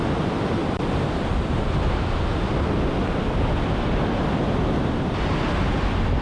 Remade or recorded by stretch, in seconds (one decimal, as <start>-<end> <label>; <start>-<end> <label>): 0.0-6.2 remade